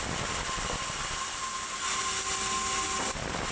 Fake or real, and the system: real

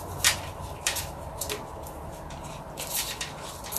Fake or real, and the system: real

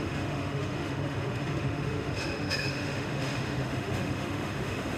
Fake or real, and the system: fake, autoencoder, DAC-VAE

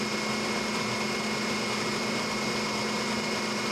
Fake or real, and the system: real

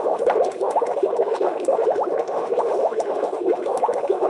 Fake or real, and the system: fake, autoencoder, DAC-VAE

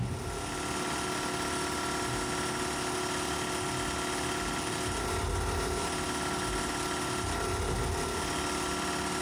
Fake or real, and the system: real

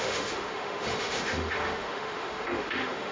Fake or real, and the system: fake, autoencoder, DAC-VAE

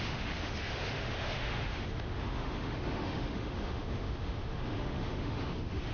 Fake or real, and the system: fake, autoencoder, DAC-VAE